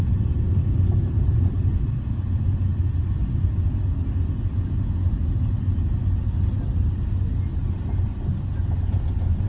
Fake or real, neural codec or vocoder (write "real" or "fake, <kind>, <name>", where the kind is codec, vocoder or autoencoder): real